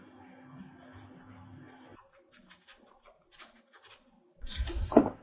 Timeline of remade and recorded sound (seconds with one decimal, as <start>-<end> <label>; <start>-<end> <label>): 0.0-1.9 recorded; 1.9-5.2 remade